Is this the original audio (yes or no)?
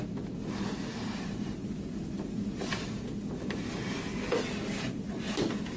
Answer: yes